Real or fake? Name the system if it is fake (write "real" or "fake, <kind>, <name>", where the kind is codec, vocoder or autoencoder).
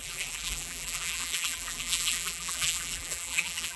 fake, vocoder, BigVGAN v2